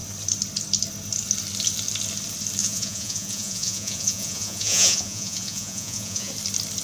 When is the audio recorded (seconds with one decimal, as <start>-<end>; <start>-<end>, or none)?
0.0-2.6; 6.3-6.8